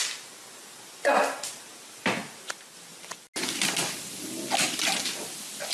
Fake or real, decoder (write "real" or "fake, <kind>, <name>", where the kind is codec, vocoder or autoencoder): real